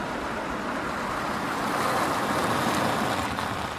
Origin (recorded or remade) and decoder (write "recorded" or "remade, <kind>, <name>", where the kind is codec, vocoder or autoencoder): remade, vocoder, BigVGAN v2